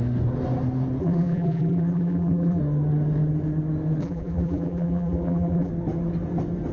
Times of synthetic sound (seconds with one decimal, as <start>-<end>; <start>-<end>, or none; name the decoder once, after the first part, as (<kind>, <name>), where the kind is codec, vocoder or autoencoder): 1.0-2.6 (vocoder, BigVGAN v2); 4.0-5.7